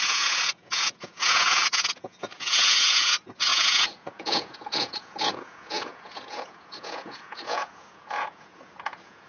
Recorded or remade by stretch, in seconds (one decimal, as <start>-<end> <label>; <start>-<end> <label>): 0.0-9.3 remade